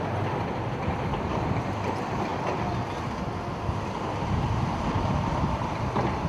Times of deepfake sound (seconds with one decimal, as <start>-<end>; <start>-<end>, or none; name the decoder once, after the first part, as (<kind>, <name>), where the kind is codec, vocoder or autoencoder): 0.0-6.3 (vocoder, BigVGAN v2)